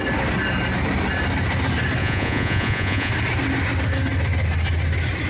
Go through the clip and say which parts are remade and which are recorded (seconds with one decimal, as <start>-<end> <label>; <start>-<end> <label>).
0.0-2.0 recorded; 2.0-3.1 remade; 3.1-5.3 recorded